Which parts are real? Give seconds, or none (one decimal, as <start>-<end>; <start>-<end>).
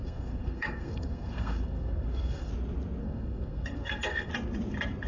2.5-3.0; 4.3-5.1